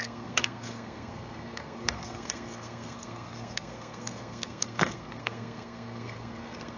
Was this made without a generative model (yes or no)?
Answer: no